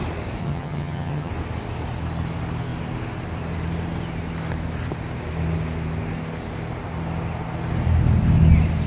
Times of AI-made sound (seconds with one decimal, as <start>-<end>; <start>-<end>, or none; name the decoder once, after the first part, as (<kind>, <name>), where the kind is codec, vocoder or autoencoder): 0.4-1.3 (vocoder, HiFi-GAN)